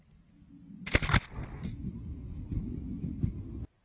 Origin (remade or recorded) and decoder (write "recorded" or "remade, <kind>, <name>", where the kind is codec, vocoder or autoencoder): recorded